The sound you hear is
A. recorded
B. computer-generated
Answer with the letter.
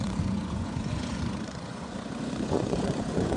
B